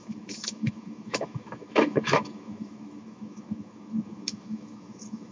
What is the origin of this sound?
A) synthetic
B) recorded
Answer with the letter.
A